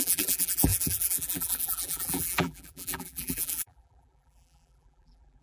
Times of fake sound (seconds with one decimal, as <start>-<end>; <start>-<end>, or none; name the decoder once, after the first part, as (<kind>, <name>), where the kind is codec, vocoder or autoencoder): 0.0-5.4 (vocoder, BigVGAN v2)